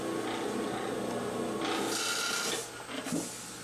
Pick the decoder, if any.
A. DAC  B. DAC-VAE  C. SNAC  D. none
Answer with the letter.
D